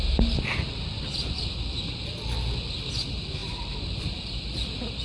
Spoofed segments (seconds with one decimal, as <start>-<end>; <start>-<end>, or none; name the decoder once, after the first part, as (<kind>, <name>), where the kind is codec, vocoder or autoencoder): 3.4-5.0 (vocoder, BigVGAN v2)